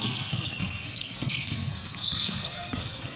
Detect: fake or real fake